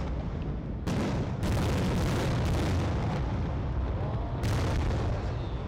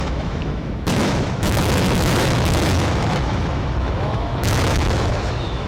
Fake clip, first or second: second